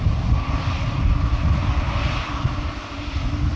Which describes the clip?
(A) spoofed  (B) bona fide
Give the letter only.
B